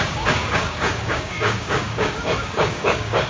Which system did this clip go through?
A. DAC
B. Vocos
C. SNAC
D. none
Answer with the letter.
A